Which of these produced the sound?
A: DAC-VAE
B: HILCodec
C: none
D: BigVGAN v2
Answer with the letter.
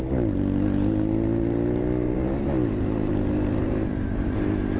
D